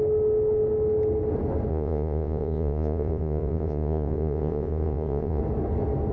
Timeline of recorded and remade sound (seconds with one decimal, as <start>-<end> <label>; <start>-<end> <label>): 0.0-1.7 recorded; 1.7-5.4 remade; 5.4-6.1 recorded